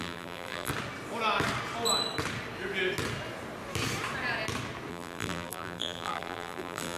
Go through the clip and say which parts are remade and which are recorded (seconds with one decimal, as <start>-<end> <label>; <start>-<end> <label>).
0.0-0.7 remade; 0.7-4.9 recorded; 4.9-7.0 remade